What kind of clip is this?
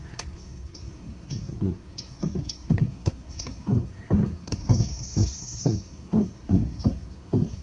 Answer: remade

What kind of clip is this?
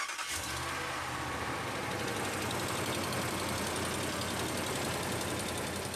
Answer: recorded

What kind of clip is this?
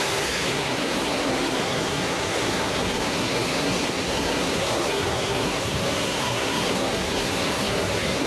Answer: remade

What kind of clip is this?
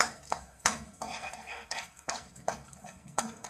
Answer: remade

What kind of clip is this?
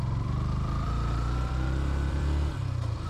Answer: remade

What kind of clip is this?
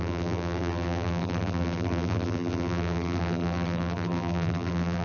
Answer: remade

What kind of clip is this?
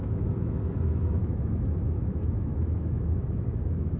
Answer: remade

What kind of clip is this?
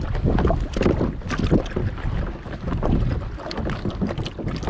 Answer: recorded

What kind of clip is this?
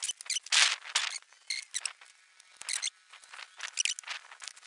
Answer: recorded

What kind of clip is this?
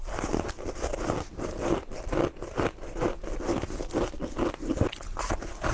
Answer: recorded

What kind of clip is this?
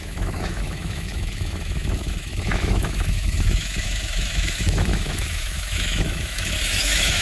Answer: remade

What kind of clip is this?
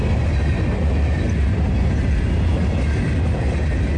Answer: recorded